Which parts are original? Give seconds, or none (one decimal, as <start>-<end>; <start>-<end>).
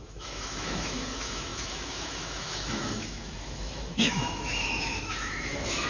none